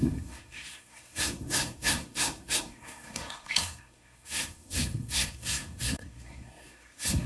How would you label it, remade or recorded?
remade